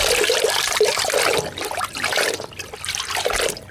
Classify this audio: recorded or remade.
recorded